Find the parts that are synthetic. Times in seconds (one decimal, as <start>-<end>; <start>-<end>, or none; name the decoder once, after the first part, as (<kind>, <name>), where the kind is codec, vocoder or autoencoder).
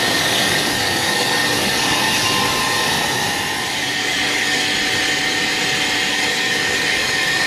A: 0.0-2.6 (codec, DAC); 3.7-4.7; 6.1-7.5